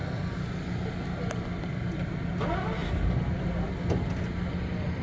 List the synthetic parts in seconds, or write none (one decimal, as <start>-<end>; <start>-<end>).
none